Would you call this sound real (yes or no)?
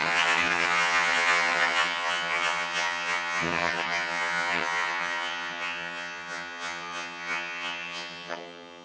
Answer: no